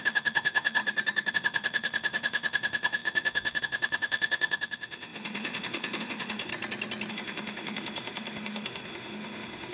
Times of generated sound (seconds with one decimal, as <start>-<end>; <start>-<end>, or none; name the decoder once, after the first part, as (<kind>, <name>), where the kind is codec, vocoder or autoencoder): 0.0-0.8 (autoencoder, DAC-VAE); 1.3-6.5; 7.1-9.7